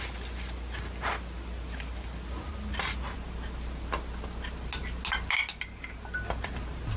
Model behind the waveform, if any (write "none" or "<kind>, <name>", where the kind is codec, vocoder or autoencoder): none